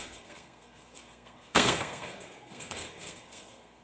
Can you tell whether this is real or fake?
fake